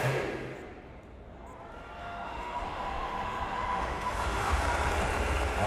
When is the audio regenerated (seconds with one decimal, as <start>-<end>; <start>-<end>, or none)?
2.0-4.6